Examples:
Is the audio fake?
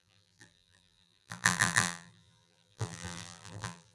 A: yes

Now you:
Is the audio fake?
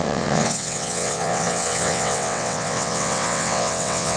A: yes